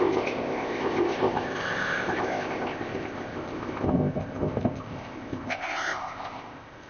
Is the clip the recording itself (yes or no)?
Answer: no